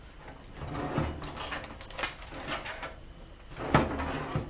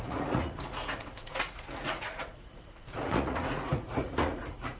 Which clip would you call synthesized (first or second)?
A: second